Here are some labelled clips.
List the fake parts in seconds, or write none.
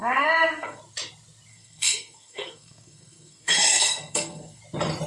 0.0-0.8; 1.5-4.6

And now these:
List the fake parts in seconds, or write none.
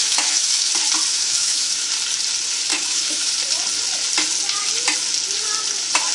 0.0-0.7; 1.1-1.9; 2.7-3.3